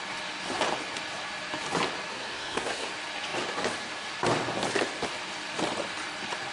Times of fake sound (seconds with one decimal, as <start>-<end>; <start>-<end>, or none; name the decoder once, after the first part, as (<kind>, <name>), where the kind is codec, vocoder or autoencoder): 2.1-2.9 (codec, SNAC)